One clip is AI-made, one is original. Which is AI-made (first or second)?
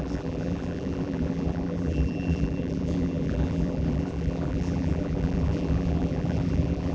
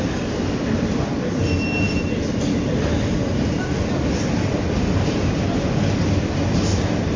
first